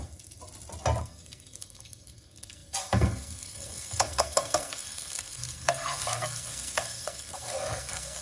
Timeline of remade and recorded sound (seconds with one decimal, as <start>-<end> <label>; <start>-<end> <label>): 0.0-0.4 remade; 0.4-1.0 recorded; 1.0-8.2 remade